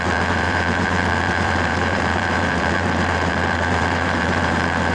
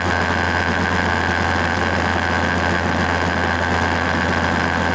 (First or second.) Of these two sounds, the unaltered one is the second